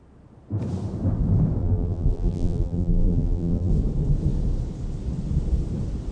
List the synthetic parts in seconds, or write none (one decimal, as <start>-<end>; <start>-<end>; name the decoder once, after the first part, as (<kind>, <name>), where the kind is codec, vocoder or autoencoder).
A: 1.6-3.7 (vocoder, BigVGAN v2)

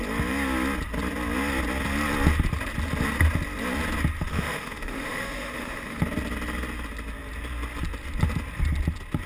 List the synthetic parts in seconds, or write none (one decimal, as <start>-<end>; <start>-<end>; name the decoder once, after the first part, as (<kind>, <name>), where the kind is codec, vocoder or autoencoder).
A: 4.3-6.0 (autoencoder, DAC-VAE)

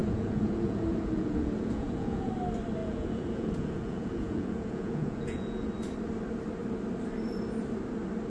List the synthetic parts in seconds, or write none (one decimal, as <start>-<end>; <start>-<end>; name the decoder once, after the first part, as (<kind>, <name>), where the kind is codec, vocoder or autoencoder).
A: 0.0-2.3 (vocoder, Vocos); 2.8-5.7

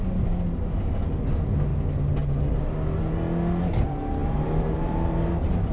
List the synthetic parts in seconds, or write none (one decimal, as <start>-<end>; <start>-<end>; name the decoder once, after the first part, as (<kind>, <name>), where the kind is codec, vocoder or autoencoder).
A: 4.2-5.3 (vocoder, BigVGAN v2)